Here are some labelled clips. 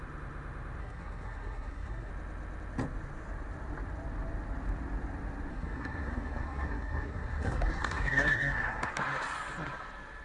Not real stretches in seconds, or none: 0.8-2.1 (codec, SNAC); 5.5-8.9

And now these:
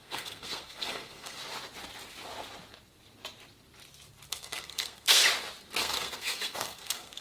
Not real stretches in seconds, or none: 0.0-1.4 (codec, SNAC); 4.3-5.2; 5.8-7.2

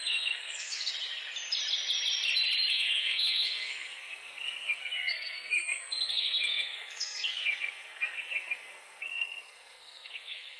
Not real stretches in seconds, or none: 0.0-0.9 (codec, SNAC); 2.7-10.6